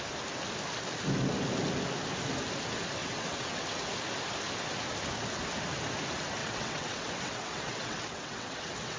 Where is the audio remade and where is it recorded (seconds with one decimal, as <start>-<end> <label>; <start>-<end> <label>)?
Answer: 0.0-3.0 recorded; 3.0-3.9 remade; 3.9-6.4 recorded; 6.4-9.0 remade